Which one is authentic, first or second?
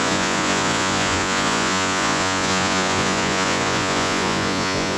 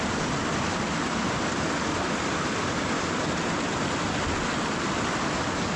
second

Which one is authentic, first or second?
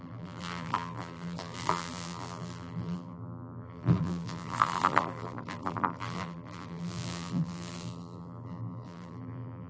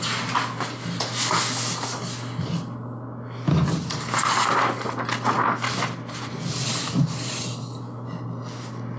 second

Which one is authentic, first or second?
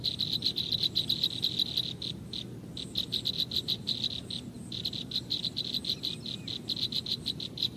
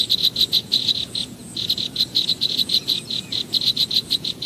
first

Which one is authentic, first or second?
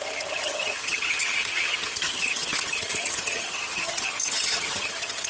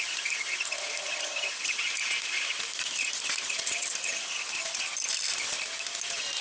second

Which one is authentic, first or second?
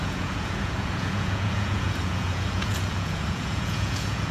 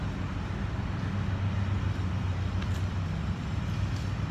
second